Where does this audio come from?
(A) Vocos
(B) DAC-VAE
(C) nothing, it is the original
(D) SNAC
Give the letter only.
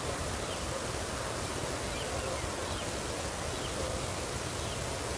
C